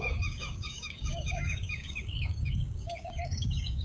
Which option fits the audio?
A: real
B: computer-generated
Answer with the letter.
B